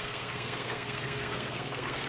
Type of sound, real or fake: fake